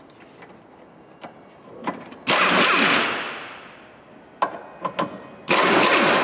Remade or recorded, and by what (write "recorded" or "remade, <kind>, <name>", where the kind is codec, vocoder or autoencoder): recorded